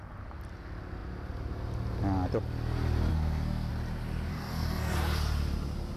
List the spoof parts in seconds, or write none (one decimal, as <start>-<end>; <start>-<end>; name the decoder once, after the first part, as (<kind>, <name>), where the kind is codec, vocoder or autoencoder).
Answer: 3.1-3.7 (codec, SNAC); 4.3-4.9

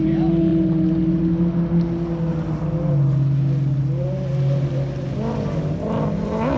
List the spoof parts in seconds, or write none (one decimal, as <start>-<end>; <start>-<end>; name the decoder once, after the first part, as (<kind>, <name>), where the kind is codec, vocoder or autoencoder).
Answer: none

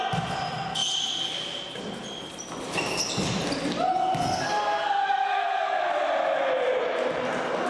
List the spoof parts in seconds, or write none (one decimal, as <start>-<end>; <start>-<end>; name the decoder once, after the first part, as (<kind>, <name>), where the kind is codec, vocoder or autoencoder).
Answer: 4.2-5.8 (codec, SNAC)

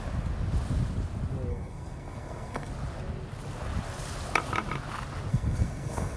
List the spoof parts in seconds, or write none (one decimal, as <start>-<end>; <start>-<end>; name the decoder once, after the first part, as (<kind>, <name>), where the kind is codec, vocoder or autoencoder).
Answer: 1.5-2.7 (codec, SNAC); 5.3-6.2

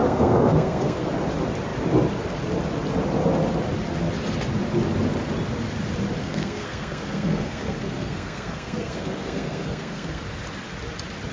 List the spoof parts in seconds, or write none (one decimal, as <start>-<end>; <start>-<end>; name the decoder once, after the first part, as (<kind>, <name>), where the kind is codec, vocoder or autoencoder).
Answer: 0.0-1.1 (codec, SNAC); 6.2-10.2

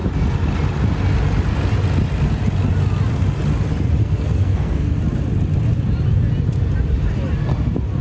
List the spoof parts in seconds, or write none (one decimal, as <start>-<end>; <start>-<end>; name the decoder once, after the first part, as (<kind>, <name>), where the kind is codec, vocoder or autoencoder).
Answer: 4.0-5.0 (codec, SNAC)

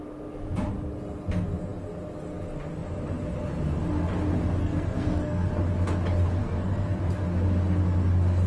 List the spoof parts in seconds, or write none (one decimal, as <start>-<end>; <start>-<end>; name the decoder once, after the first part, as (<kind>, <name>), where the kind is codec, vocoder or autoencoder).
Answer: 4.6-5.5 (codec, SNAC); 6.4-7.0